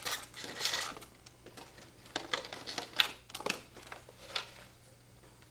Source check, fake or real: real